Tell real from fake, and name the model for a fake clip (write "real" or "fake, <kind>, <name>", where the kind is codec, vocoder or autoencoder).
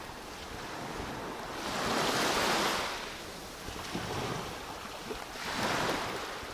real